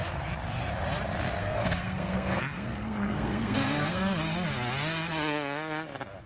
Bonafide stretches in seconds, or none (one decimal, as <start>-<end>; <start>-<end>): 0.0-1.4; 4.0-6.3